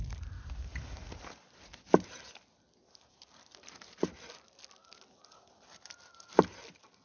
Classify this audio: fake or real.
real